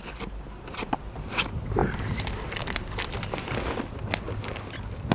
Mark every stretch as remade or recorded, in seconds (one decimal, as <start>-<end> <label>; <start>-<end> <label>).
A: 0.0-5.1 recorded